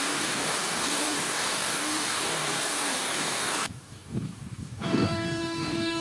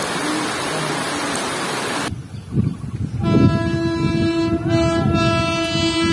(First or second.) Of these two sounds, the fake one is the first